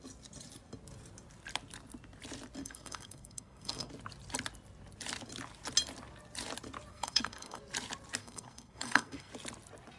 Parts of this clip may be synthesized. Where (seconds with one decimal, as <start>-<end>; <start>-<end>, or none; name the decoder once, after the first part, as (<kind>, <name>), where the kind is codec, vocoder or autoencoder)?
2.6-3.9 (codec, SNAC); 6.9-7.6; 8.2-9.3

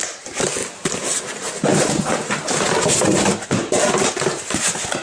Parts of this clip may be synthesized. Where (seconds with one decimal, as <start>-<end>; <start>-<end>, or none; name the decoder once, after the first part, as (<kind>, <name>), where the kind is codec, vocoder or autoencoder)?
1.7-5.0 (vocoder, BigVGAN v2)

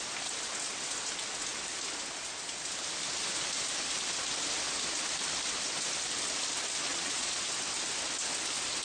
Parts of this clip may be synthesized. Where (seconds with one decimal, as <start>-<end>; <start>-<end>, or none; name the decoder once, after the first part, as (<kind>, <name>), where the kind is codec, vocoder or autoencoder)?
6.9-7.5 (vocoder, Vocos)

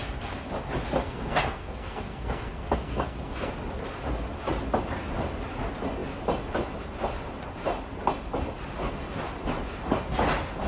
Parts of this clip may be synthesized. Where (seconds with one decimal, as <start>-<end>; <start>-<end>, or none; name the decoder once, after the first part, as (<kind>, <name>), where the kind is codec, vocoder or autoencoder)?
0.0-0.5 (codec, SNAC); 1.0-3.5